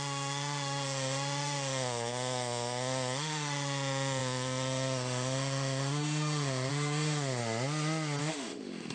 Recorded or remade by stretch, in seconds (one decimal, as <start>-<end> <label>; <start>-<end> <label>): 0.0-7.4 remade; 7.4-8.2 recorded; 8.2-8.9 remade